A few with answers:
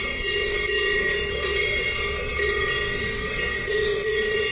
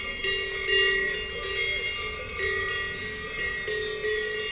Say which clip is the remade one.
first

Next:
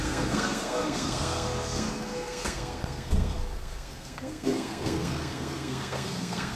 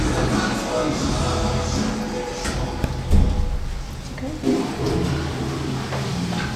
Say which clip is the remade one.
first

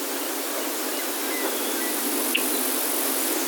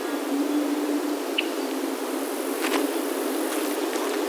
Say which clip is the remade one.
second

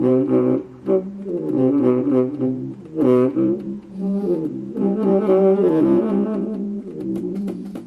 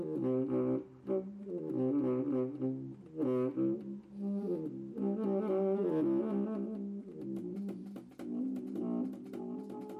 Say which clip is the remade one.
first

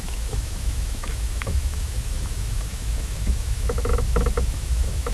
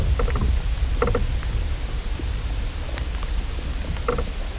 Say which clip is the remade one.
first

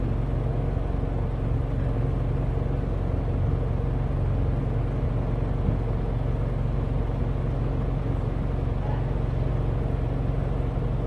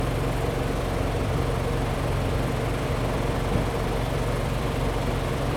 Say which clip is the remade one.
second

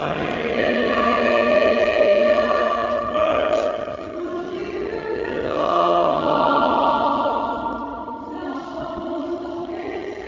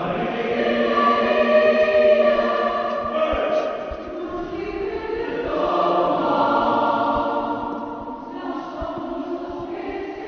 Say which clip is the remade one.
first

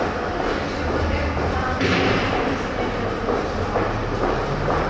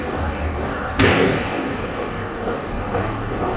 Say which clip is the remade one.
second